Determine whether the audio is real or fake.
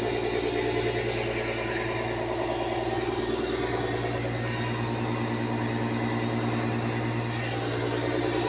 real